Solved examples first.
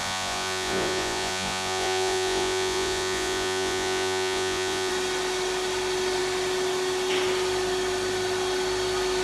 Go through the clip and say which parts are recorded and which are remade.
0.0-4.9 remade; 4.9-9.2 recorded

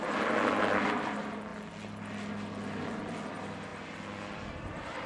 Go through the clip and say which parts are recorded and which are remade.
0.0-5.1 recorded

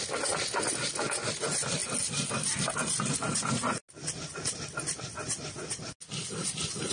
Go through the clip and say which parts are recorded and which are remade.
0.0-6.9 recorded

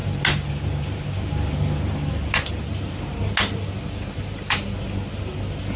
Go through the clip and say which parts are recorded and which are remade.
0.0-5.8 recorded